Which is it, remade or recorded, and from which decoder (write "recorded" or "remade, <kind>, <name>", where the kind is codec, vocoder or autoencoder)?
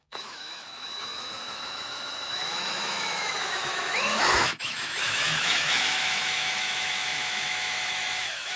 remade, autoencoder, DAC-VAE